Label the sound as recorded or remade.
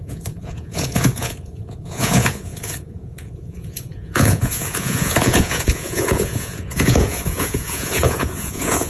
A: remade